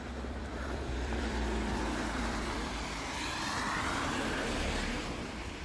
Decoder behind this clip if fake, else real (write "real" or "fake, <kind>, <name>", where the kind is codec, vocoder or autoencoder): fake, vocoder, BigVGAN v2